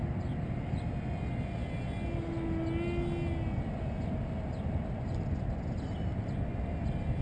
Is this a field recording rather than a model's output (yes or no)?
yes